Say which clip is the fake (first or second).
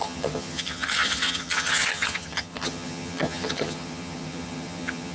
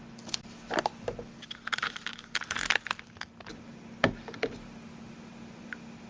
first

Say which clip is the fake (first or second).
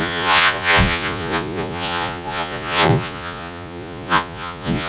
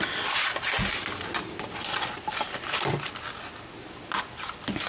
first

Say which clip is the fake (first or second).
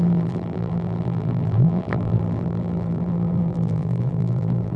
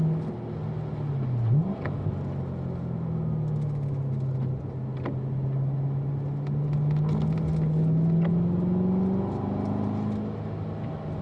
first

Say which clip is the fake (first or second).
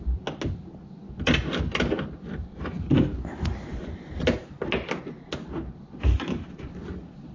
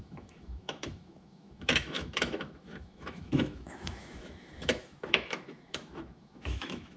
second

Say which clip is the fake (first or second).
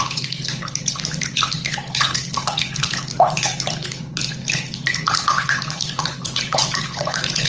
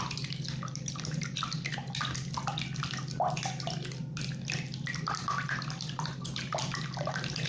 first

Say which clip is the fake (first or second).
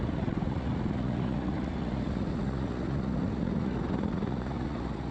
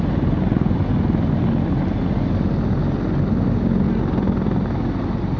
first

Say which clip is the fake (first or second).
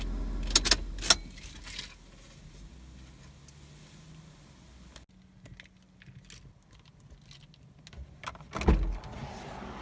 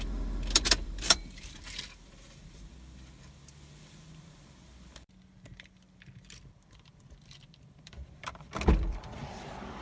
second